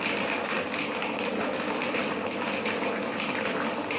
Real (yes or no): yes